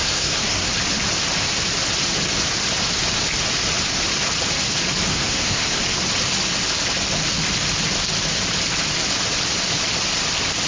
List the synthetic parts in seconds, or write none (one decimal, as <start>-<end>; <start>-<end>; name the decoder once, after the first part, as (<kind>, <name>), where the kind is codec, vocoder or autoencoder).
0.0-0.7 (codec, SNAC); 5.1-5.8